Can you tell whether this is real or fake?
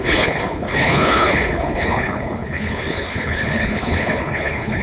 fake